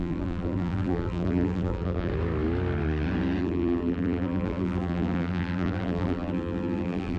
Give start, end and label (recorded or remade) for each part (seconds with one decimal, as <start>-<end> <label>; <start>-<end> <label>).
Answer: 0.0-2.1 remade; 2.1-3.4 recorded; 3.4-7.2 remade